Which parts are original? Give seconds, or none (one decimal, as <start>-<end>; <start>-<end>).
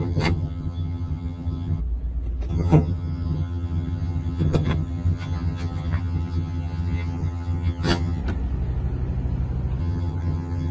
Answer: 1.8-2.5; 8.2-9.8